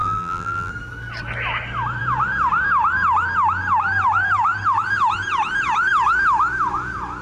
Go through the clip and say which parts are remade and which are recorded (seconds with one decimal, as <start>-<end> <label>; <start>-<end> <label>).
0.0-0.7 remade; 0.7-7.2 recorded